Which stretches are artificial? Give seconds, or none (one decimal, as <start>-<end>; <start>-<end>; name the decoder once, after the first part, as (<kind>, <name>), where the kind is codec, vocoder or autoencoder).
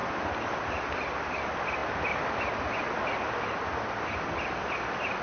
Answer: none